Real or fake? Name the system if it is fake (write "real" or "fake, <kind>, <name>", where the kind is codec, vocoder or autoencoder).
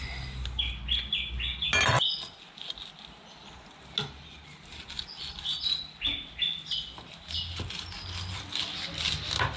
real